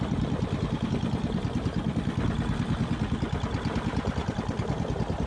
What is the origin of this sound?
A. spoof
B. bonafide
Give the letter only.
B